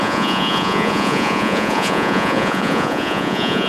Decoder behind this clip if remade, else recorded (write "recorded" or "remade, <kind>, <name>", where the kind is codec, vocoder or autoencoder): remade, vocoder, Vocos